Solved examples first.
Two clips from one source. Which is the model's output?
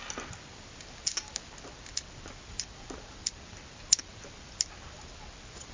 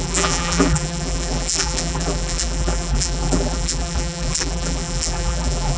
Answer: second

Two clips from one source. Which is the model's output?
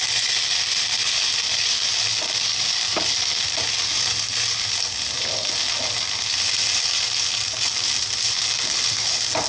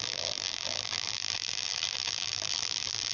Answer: second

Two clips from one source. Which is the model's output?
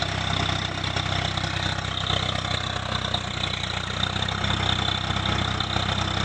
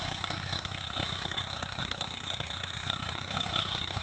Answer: second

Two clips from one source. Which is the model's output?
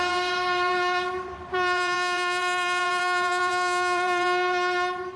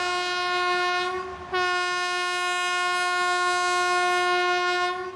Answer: first